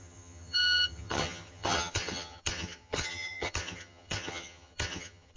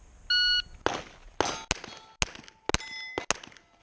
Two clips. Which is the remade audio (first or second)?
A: first